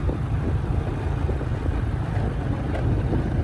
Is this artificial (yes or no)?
no